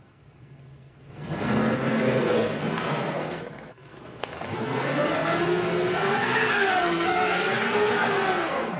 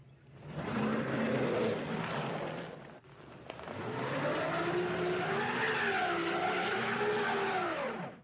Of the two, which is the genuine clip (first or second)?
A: second